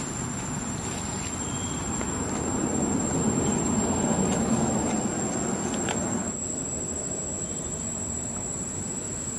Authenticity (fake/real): real